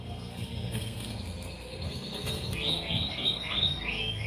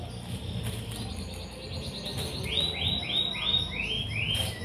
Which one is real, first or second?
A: second